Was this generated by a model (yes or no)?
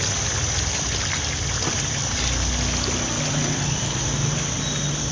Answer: no